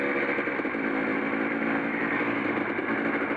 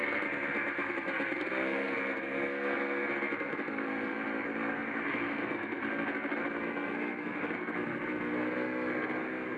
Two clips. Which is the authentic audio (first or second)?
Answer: first